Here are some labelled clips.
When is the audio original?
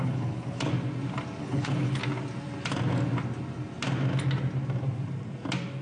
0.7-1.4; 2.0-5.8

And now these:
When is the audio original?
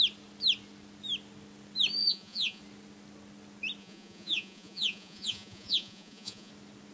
0.0-2.0; 2.6-3.8; 6.5-6.9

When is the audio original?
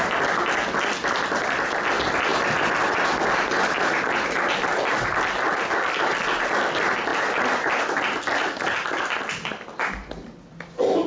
0.0-2.3; 6.5-7.1; 7.7-11.1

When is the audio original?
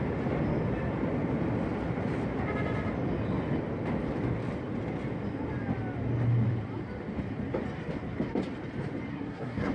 0.0-9.1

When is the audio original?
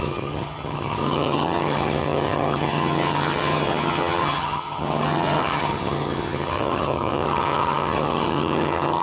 none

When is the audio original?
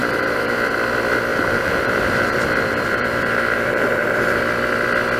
0.7-1.3; 4.4-5.2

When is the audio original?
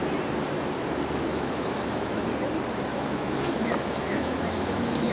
0.0-1.3; 2.3-2.9